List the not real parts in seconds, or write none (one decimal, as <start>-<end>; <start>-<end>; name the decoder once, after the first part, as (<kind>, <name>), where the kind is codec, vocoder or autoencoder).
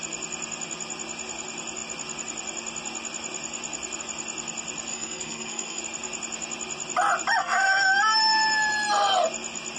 4.9-5.8 (codec, SNAC); 7.4-7.9